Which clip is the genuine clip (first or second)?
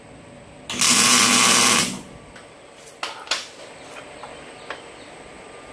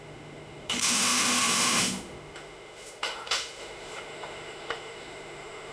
first